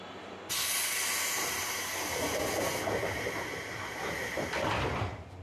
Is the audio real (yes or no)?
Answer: yes